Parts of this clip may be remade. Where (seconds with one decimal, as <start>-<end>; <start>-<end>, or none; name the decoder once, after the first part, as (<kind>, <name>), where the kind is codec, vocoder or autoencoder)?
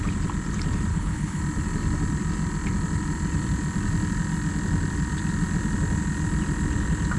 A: 0.9-1.4 (codec, HILCodec)